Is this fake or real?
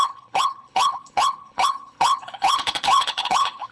fake